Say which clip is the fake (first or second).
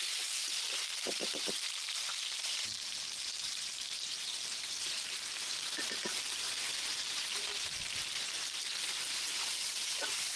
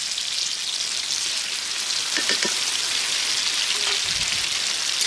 first